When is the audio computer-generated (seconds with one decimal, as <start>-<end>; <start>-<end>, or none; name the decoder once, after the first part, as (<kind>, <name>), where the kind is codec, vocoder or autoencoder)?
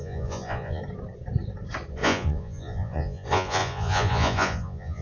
0.0-0.8 (vocoder, Vocos); 1.9-5.0